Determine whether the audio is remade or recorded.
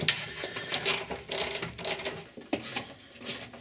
recorded